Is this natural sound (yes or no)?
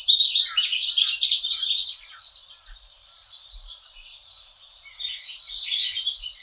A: no